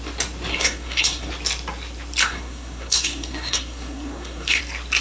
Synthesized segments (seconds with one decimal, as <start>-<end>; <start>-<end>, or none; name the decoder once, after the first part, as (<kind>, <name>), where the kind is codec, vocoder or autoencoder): 0.5-1.3 (codec, SNAC); 2.2-4.6